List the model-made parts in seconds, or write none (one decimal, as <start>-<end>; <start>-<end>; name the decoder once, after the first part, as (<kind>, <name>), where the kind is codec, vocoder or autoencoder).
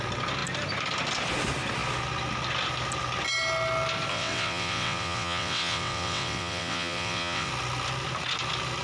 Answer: 4.1-7.5 (vocoder, WaveNeXt)